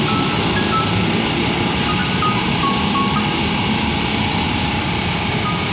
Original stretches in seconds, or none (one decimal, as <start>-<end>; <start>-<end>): 0.0-2.0; 2.6-5.7

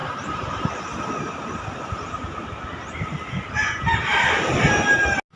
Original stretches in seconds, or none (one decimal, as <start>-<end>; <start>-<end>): 0.8-5.4